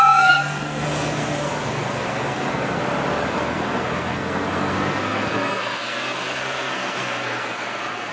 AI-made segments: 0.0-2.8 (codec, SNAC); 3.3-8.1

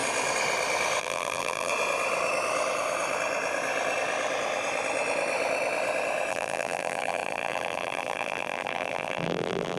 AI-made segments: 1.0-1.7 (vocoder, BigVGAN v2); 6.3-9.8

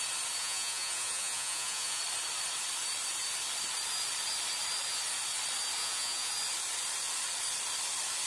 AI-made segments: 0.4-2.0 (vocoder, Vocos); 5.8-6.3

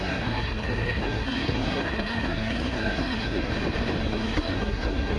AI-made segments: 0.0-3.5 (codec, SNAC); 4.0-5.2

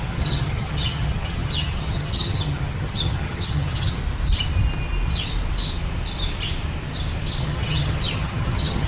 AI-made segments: 0.0-4.0 (vocoder, HiFi-GAN); 7.4-8.9

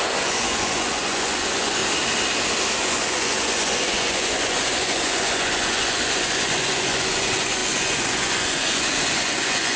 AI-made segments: 0.0-1.8 (vocoder, Vocos); 2.8-9.8